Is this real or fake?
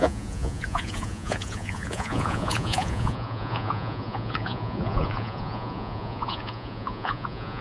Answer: fake